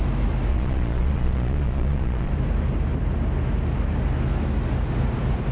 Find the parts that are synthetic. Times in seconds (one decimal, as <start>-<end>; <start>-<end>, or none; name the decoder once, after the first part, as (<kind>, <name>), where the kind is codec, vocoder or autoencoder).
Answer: 0.5-2.3 (vocoder, Vocos)